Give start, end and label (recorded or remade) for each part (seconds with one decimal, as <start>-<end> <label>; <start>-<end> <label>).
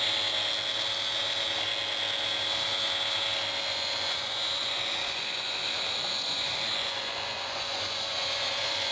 0.0-3.7 recorded; 3.7-8.9 remade